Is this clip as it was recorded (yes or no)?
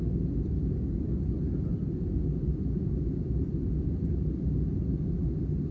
yes